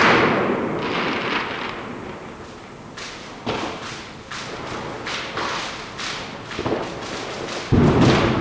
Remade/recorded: recorded